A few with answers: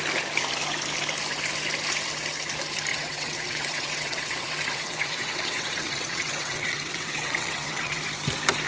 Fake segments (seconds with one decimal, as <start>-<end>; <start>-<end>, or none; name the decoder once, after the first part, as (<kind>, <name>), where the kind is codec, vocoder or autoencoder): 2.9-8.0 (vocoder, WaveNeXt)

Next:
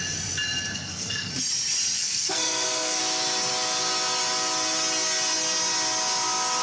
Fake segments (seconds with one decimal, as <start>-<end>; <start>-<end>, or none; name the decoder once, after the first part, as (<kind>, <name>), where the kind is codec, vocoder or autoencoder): 0.7-1.3 (codec, SNAC); 2.0-3.0

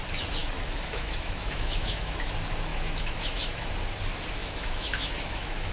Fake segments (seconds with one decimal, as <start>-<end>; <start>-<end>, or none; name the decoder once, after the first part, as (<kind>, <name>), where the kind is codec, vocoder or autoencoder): 0.4-2.3 (autoencoder, DAC-VAE); 2.7-3.7; 4.4-5.7

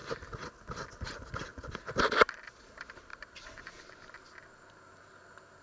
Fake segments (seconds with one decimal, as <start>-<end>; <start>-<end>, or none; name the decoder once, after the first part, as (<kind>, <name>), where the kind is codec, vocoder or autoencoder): 0.9-1.5 (vocoder, BigVGAN v2); 2.6-5.6

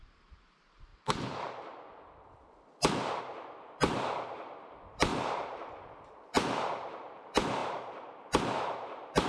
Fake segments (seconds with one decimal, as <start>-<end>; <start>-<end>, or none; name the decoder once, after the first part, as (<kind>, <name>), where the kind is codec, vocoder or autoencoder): 0.0-0.9 (vocoder, BigVGAN v2); 3.2-9.3

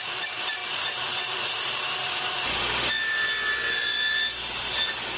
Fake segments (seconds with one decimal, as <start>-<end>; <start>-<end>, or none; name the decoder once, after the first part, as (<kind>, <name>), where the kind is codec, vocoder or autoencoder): none